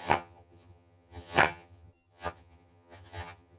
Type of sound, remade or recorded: remade